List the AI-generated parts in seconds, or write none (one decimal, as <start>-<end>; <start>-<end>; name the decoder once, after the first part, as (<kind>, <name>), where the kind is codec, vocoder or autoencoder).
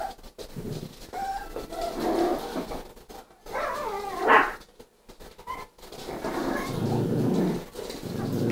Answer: none